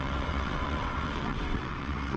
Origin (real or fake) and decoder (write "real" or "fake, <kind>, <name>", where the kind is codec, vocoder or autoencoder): fake, vocoder, WaveNeXt